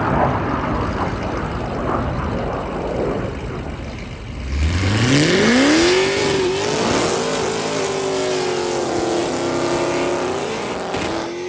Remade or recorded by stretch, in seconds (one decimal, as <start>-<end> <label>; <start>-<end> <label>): 0.0-11.5 recorded